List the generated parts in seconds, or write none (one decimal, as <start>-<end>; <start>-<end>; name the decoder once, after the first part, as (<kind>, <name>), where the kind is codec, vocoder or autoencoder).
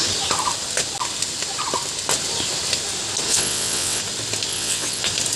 3.3-4.0 (vocoder, WaveNeXt); 4.5-5.0